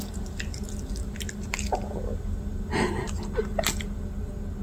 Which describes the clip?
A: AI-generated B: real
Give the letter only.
B